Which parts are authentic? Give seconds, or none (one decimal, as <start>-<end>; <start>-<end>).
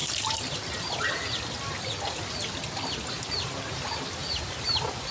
0.0-5.1